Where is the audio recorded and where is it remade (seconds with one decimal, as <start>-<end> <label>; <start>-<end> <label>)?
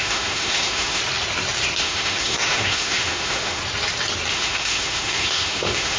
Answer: 0.0-1.0 remade; 1.0-1.8 recorded; 1.8-3.6 remade; 3.6-4.3 recorded; 4.3-6.0 remade